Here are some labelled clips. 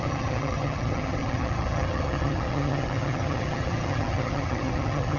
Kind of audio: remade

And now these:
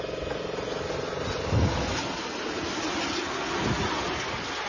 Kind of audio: recorded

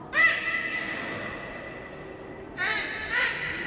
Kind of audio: recorded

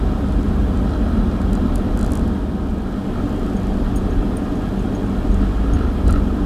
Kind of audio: recorded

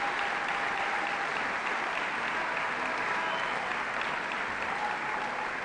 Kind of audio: recorded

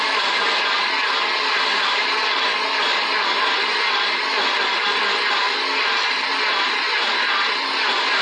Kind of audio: recorded